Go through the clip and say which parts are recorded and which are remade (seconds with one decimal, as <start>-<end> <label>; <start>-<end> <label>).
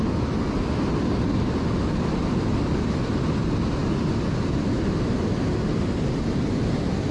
0.0-7.1 recorded